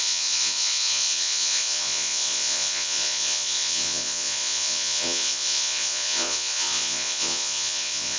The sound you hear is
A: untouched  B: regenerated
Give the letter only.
B